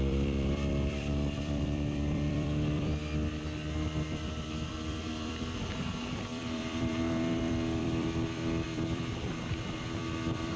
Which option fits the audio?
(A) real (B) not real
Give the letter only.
B